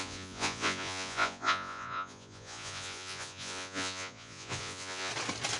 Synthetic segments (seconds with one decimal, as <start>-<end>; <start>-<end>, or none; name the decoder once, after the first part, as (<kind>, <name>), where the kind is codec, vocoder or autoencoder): 0.0-5.1 (vocoder, Vocos)